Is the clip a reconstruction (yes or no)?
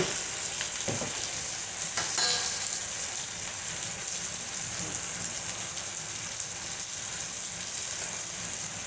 no